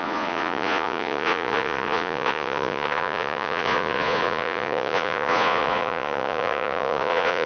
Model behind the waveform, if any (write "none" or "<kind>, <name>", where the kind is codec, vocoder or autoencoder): vocoder, Vocos